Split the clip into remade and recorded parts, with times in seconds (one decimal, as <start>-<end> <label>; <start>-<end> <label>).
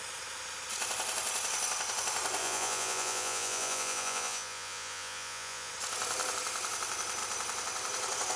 0.0-2.4 recorded; 2.4-5.7 remade; 5.7-8.4 recorded